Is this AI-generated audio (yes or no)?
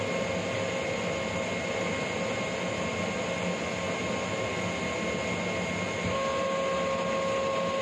no